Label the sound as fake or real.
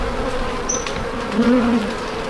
real